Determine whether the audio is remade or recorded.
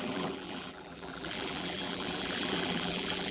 remade